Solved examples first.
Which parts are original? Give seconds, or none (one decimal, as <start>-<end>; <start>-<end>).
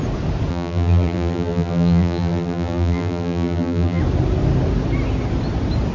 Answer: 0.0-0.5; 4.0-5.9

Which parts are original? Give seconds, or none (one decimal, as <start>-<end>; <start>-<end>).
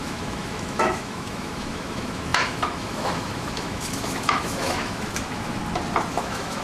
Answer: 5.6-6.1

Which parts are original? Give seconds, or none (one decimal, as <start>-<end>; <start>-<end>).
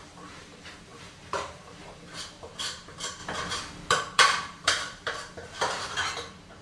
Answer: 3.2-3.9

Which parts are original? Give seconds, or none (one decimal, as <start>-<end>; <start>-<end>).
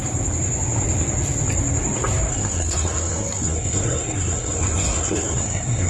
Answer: 0.0-2.3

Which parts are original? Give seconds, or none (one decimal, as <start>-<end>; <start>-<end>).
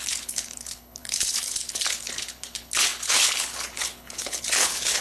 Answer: none